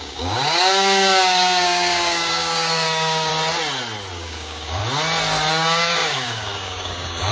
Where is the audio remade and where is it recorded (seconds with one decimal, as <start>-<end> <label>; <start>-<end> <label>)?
0.0-3.3 remade; 3.3-4.1 recorded; 4.1-4.8 remade; 4.8-5.5 recorded; 5.5-7.3 remade